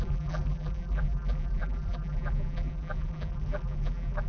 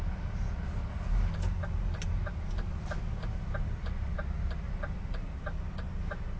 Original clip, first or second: second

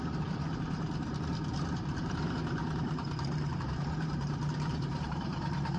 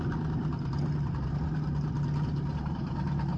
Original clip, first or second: second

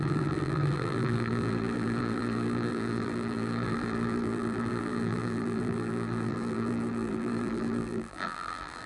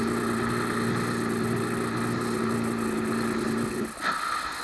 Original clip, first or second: second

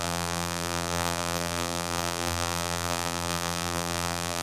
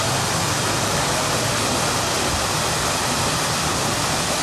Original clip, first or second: second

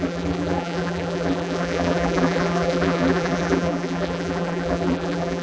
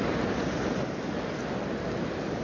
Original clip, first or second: second